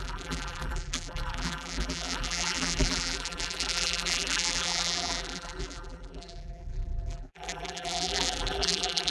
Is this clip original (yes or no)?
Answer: no